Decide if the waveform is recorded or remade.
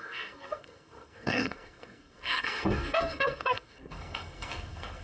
remade